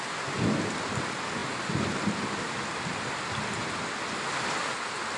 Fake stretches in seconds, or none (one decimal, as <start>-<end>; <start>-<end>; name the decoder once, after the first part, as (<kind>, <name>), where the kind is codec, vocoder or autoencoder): none